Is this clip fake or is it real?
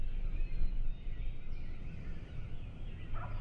real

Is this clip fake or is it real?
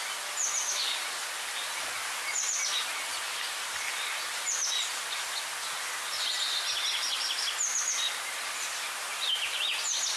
real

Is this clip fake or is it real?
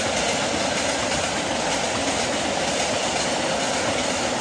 real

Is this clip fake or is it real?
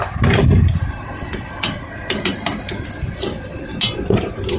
real